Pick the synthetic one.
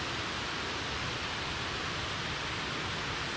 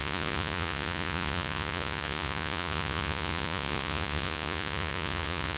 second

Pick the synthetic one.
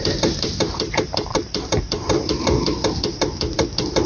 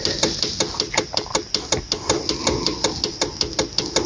first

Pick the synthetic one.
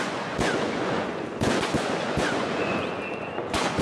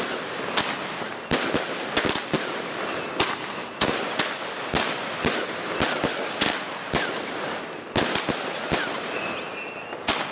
first